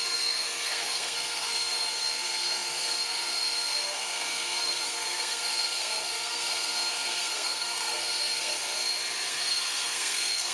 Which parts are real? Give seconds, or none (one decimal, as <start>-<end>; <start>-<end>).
8.6-9.3